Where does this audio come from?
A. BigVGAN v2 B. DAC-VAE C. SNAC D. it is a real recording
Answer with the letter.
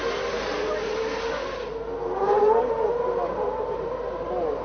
D